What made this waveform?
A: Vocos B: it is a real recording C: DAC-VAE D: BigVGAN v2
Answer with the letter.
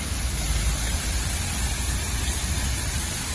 B